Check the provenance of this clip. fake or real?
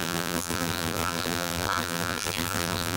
fake